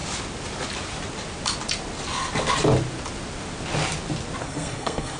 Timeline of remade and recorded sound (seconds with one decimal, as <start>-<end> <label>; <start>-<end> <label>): 0.0-4.4 recorded; 4.4-5.2 remade